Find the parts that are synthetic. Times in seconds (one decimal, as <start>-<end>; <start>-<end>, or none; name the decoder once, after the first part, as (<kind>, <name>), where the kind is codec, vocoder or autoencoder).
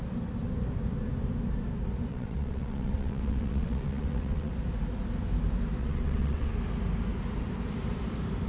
2.1-4.5 (vocoder, WaveNeXt); 5.8-6.5